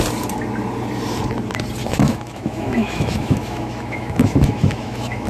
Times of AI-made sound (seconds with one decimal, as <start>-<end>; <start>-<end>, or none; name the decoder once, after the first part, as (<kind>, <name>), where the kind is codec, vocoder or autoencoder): 1.8-5.3 (autoencoder, DAC-VAE)